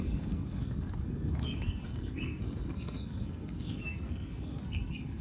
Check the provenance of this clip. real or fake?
fake